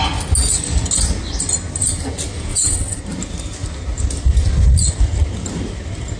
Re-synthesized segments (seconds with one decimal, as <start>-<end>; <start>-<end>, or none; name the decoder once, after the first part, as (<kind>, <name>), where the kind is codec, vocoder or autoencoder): 2.5-3.0 (vocoder, WaveNeXt)